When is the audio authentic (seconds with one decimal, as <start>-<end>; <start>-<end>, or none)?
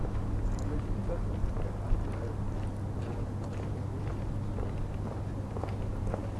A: 0.0-6.4